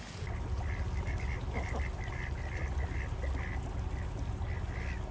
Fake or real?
real